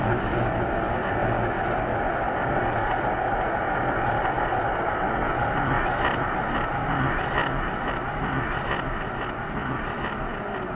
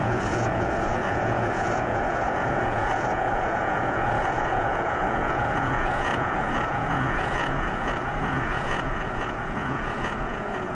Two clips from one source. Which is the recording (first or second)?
first